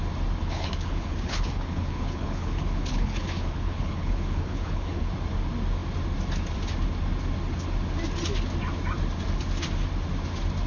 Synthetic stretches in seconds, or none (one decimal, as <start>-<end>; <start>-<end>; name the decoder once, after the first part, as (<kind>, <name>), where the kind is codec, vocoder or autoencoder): 0.4-5.1 (codec, HILCodec)